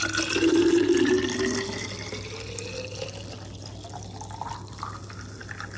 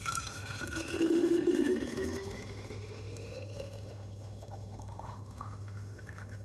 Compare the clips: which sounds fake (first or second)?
second